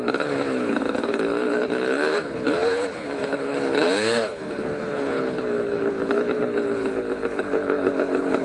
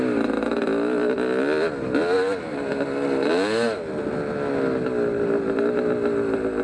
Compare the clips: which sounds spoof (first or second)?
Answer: first